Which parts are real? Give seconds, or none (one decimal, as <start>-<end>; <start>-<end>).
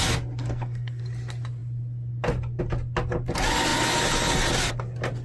0.0-0.4; 1.0-5.2